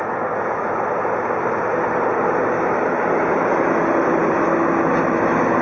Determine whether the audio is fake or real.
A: real